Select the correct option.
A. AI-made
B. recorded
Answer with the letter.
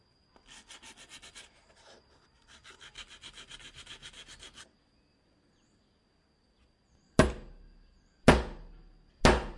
B